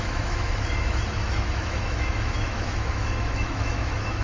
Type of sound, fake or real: fake